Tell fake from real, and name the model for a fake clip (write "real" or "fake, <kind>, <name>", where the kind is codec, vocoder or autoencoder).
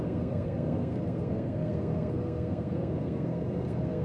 fake, codec, SNAC